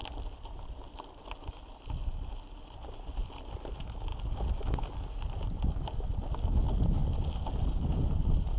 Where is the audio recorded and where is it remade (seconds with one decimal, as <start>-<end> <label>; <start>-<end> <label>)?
0.0-8.6 recorded